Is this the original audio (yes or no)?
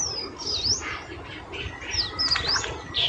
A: yes